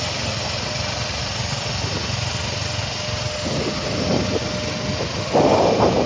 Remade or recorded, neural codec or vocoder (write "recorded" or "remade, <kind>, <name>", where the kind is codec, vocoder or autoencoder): recorded